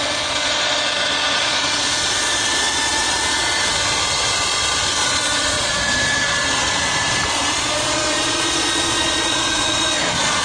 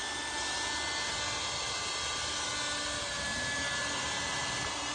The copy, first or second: first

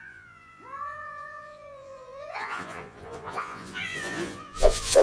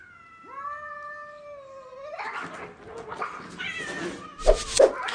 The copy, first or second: first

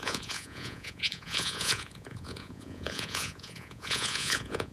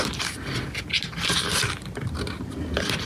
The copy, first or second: first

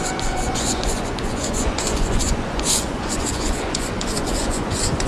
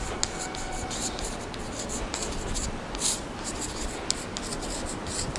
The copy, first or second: first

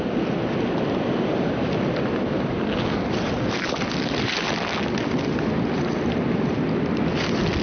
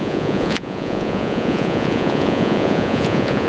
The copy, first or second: second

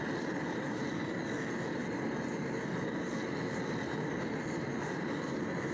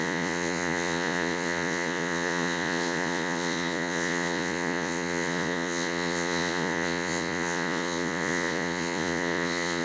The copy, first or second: second